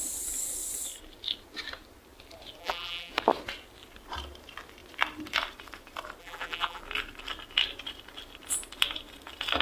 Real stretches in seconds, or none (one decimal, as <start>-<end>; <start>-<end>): 0.0-2.6; 3.1-6.2; 6.8-9.6